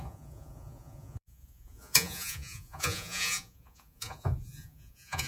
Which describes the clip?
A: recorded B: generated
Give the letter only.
B